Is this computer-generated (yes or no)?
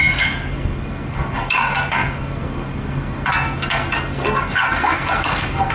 yes